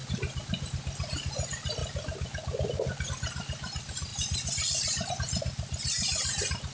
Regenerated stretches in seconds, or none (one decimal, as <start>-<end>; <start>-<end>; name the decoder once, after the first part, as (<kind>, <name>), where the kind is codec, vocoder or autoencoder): none